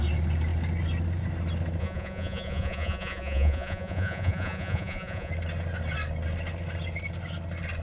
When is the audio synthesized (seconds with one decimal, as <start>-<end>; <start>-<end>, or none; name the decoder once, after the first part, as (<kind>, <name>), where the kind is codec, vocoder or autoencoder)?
1.8-5.3 (vocoder, Vocos)